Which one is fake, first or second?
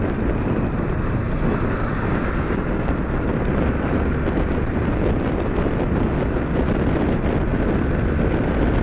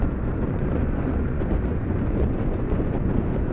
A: second